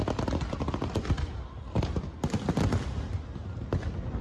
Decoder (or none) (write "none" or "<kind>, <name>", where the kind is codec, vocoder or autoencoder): none